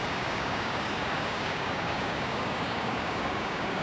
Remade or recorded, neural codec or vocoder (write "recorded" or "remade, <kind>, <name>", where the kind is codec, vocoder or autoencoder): remade, codec, DAC